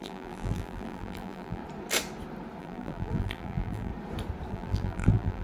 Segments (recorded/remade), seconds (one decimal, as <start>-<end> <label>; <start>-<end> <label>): 0.0-1.6 remade; 1.6-2.6 recorded; 2.6-3.9 remade; 3.9-4.5 recorded; 4.5-5.4 remade